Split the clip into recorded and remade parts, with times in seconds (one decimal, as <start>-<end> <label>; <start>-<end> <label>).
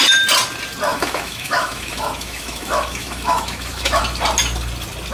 0.0-0.9 recorded; 0.9-4.0 remade; 4.0-5.1 recorded